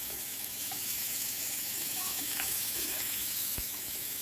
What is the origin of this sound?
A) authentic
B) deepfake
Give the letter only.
B